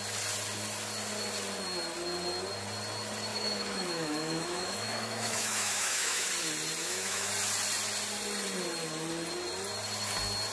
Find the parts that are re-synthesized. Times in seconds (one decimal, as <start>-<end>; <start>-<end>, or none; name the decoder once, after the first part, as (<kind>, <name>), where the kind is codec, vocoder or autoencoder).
3.3-6.3 (autoencoder, DAC-VAE); 6.8-7.3